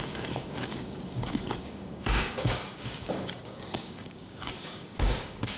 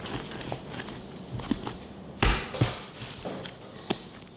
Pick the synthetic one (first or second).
first